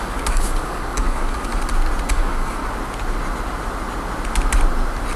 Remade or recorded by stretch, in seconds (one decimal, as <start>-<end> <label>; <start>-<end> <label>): 0.0-1.5 remade; 1.5-2.1 recorded; 2.1-2.6 remade; 2.6-5.2 recorded